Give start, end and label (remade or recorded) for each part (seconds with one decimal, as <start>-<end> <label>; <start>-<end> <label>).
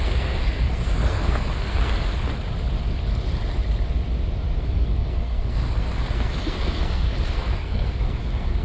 0.0-2.1 remade; 2.1-4.6 recorded; 4.6-8.6 remade